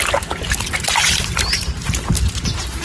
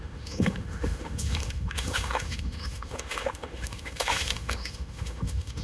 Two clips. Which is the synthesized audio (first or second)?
second